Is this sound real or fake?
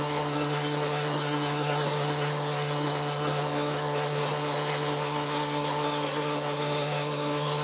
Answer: fake